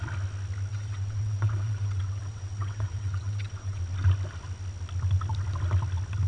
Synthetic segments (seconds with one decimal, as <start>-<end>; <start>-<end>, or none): 0.7-3.8